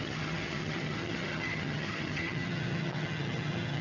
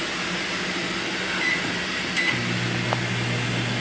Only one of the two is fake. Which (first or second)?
first